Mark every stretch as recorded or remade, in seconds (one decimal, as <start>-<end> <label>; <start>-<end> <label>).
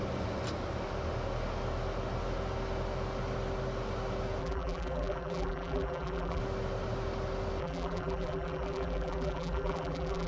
0.0-4.4 recorded; 4.4-6.4 remade; 6.4-7.6 recorded; 7.6-10.3 remade